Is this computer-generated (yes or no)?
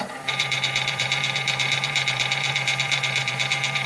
yes